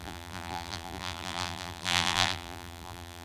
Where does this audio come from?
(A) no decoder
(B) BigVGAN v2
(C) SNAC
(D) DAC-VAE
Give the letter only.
B